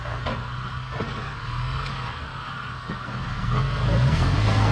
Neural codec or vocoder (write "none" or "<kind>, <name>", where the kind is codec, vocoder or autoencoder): codec, SNAC